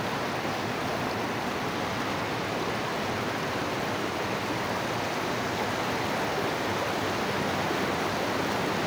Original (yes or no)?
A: yes